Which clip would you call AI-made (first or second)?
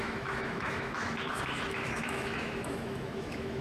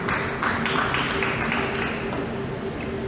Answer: first